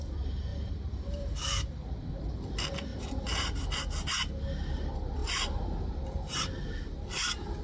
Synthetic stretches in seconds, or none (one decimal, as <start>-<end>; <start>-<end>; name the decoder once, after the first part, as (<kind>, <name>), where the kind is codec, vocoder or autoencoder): 0.5-2.2 (vocoder, BigVGAN v2); 2.9-3.6; 5.2-6.4

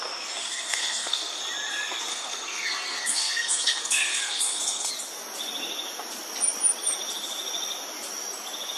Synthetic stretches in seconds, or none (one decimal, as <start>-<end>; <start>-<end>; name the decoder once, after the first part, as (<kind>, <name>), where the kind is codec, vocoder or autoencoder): 0.4-1.4 (codec, SNAC); 2.1-4.9